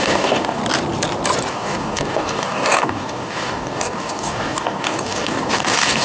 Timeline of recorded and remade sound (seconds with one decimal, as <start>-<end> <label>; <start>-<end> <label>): 0.0-0.6 remade; 0.6-1.5 recorded; 1.5-6.0 remade